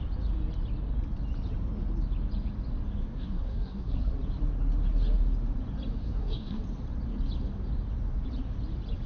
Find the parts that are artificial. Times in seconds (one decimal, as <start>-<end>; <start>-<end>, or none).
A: 3.0-4.1; 6.0-6.6